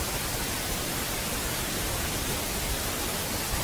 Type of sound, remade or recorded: remade